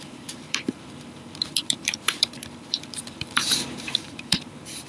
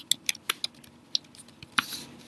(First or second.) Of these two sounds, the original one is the second